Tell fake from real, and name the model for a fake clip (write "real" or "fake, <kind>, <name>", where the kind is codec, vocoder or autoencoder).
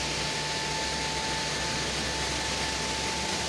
real